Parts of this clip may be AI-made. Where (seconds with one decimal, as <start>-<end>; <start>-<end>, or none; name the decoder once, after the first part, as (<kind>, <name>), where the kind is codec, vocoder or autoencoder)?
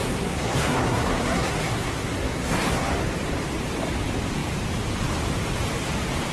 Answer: 0.0-2.9 (codec, SNAC)